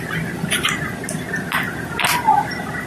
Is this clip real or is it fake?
real